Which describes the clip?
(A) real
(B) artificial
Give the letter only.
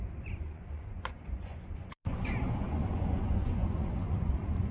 B